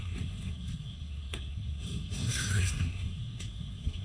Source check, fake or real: fake